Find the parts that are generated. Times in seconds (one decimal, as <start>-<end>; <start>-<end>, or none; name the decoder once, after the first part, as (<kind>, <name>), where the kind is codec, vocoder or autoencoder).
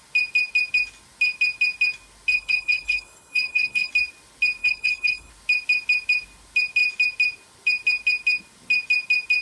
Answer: 2.3-3.9 (codec, HILCodec); 4.6-5.3